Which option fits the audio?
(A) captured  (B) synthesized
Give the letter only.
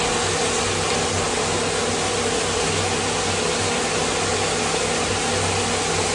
A